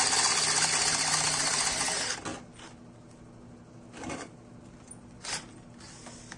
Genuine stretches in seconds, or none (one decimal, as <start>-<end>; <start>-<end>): 0.0-6.4